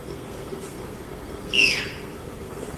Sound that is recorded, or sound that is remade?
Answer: remade